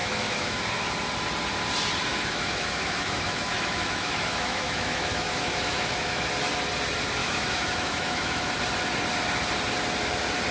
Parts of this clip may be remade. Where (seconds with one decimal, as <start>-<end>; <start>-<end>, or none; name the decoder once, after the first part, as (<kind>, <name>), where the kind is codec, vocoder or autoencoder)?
0.0-0.6 (autoencoder, DAC-VAE); 2.1-6.3; 7.2-8.5